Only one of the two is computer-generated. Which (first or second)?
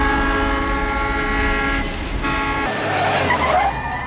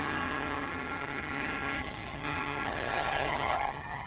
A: second